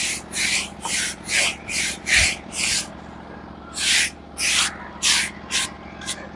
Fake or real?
real